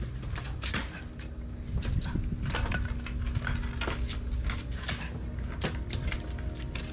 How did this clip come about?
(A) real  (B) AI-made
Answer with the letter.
A